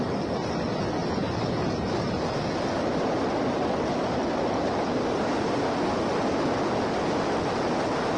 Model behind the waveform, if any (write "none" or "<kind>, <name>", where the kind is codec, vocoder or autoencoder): none